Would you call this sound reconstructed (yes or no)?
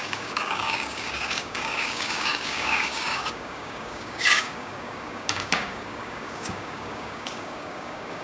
yes